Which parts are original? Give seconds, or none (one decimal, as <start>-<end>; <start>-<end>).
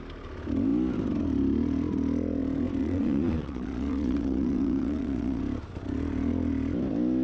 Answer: 0.0-2.8; 5.4-7.2